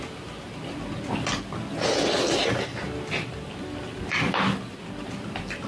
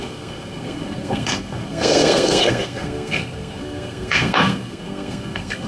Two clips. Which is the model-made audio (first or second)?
second